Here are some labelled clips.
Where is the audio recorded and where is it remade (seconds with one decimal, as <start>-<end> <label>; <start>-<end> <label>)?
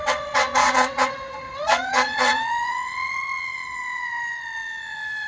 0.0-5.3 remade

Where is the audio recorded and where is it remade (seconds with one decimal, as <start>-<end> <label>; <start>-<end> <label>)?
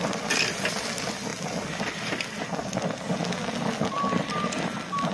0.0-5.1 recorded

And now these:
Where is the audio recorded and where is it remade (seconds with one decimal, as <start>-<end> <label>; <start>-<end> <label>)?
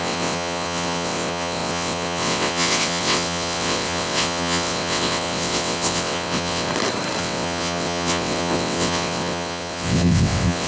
0.0-6.7 remade; 6.7-7.2 recorded; 7.2-10.7 remade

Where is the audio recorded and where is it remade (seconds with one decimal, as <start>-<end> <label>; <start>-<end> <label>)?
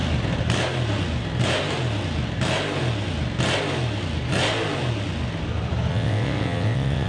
0.0-5.9 recorded; 5.9-7.1 remade